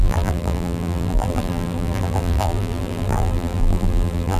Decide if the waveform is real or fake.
fake